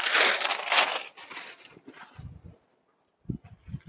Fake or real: real